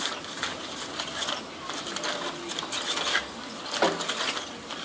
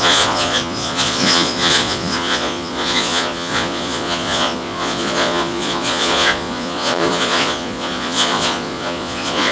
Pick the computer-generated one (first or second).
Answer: second